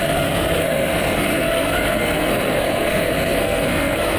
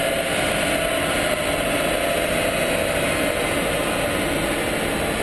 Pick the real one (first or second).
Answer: second